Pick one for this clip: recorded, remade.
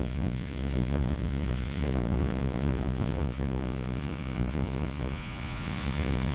remade